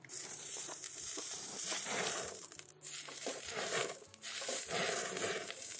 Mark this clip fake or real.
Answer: fake